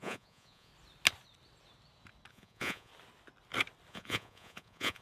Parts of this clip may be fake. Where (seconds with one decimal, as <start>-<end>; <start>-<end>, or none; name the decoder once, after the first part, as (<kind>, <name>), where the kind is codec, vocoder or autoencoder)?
0.0-0.7 (vocoder, Vocos); 2.3-2.9; 3.9-5.0